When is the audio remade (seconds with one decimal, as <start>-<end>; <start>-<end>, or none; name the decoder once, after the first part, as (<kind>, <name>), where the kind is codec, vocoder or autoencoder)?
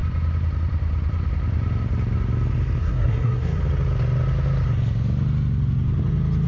2.8-3.6 (codec, SNAC)